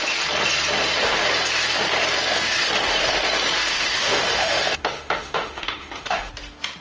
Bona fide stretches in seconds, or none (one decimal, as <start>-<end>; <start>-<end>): 0.0-3.7; 6.3-6.8